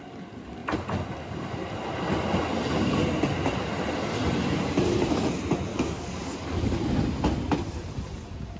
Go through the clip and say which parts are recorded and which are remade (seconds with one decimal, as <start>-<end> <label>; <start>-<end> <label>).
0.0-5.7 recorded; 5.7-6.8 remade; 6.8-8.6 recorded

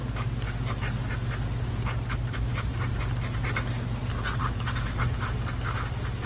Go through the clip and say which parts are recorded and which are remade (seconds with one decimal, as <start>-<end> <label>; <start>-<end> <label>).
0.0-4.4 recorded; 4.4-6.3 remade

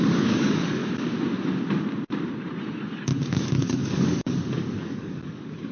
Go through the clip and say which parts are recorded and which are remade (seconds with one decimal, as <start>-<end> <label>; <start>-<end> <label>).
0.0-0.8 remade; 0.8-3.3 recorded; 3.3-5.7 remade

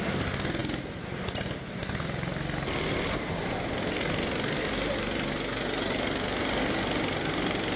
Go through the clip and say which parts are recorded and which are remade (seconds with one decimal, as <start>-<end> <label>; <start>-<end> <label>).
0.0-7.8 recorded

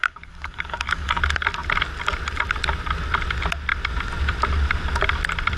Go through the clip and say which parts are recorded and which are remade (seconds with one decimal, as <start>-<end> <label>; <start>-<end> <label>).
0.0-1.2 remade; 1.2-5.6 recorded